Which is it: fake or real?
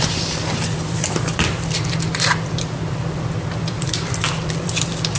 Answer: fake